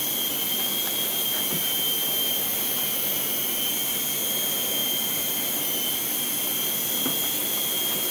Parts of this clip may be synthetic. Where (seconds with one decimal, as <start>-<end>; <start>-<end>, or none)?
none